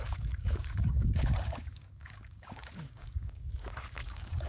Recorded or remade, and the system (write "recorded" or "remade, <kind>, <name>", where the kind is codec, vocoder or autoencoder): remade, codec, DAC